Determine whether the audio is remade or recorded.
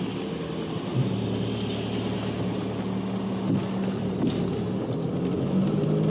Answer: recorded